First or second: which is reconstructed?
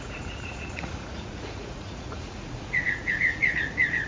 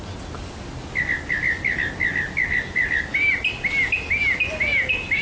first